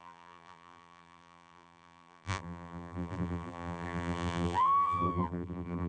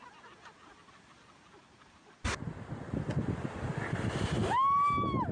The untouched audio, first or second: second